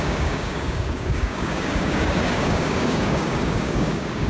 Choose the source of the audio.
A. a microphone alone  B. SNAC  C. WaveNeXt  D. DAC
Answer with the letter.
D